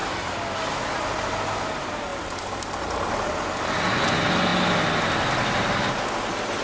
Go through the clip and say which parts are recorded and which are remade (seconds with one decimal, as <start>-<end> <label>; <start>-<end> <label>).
0.0-6.6 recorded